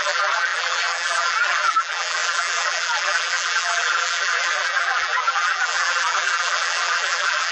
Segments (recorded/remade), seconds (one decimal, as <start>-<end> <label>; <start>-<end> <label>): 0.0-7.5 remade